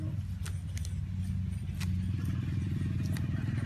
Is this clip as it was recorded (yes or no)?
yes